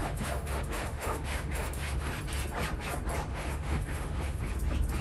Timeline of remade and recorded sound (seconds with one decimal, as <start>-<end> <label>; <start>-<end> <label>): 0.0-2.1 remade; 2.1-3.3 recorded; 3.3-4.5 remade; 4.5-5.0 recorded